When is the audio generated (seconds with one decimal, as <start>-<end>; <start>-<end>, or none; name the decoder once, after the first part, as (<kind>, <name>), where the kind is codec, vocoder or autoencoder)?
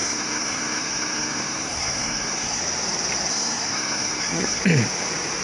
0.0-2.6 (codec, SNAC); 3.3-4.6